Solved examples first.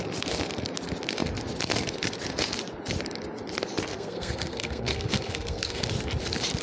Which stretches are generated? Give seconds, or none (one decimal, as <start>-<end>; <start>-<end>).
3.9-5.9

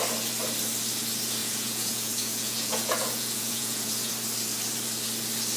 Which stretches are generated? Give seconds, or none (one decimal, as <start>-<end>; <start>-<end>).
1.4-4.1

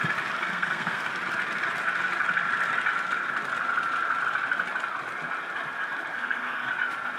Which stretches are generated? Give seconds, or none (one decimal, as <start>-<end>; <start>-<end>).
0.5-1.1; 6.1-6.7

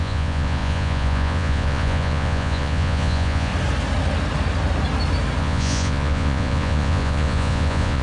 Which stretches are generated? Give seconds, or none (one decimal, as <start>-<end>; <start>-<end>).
0.0-3.5; 5.4-8.0

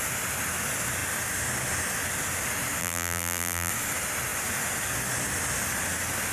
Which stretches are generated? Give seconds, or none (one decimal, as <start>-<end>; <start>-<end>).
2.8-3.7